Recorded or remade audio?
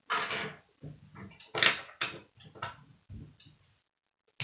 recorded